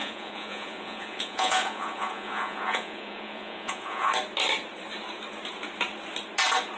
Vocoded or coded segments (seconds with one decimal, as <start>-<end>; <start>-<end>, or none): 0.0-4.1